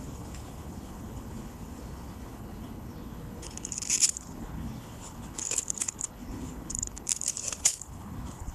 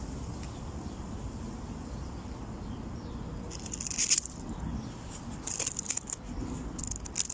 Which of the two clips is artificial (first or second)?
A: first